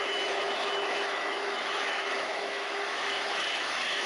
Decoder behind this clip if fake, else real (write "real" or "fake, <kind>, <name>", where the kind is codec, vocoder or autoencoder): fake, autoencoder, DAC-VAE